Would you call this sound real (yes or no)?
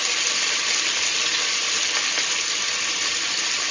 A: yes